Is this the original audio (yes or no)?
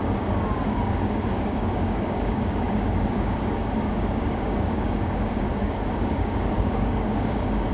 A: no